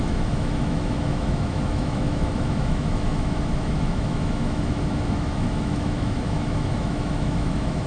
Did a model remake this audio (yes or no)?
yes